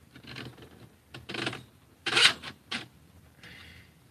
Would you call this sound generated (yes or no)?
no